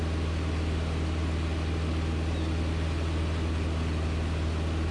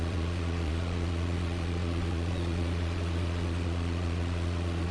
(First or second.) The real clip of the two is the first